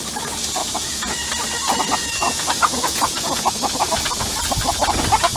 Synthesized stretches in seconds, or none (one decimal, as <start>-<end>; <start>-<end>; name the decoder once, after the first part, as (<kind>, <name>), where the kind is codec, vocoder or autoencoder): 0.6-1.3 (vocoder, Vocos); 2.0-3.6